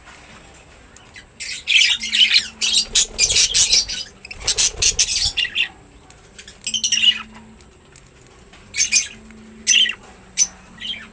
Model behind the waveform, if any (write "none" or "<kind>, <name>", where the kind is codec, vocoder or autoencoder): none